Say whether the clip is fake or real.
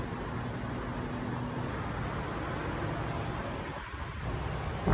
real